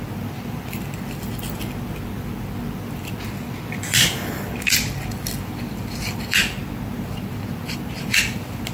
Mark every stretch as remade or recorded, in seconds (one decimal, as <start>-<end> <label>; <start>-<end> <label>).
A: 0.0-6.6 remade; 6.6-7.6 recorded; 7.6-8.7 remade